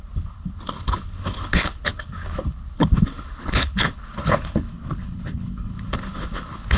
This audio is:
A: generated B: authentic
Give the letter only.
A